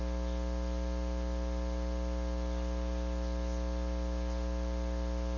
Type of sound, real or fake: real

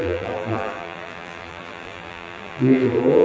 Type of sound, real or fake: fake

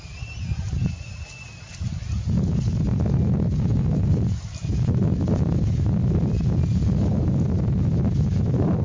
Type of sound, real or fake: real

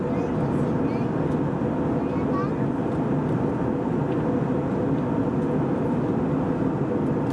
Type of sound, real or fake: real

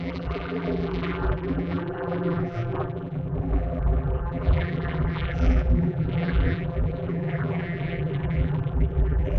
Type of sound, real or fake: fake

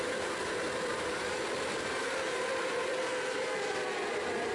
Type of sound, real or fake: fake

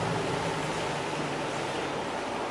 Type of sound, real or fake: real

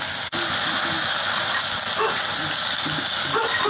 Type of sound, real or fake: real